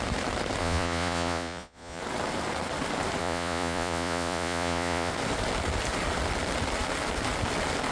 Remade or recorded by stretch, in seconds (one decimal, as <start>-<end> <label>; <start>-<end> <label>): 0.0-0.6 recorded; 0.6-2.0 remade; 2.0-3.2 recorded; 3.2-5.1 remade; 5.1-7.9 recorded